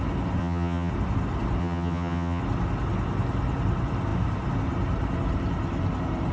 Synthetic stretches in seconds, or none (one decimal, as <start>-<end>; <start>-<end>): 0.4-0.9; 1.6-2.4

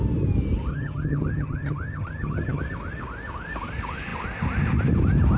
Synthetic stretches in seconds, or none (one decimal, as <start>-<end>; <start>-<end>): 0.7-2.6

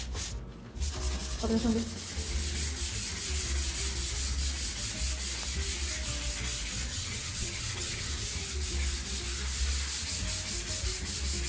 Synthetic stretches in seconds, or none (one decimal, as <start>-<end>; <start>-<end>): 6.9-8.1